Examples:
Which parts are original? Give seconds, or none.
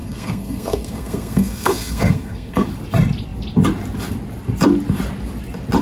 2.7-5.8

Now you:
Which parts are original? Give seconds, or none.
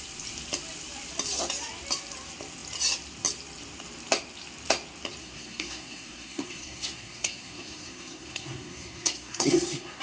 0.0-5.2